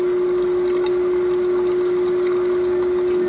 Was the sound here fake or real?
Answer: real